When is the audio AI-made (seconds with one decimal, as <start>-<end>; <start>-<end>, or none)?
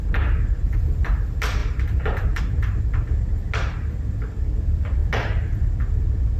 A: none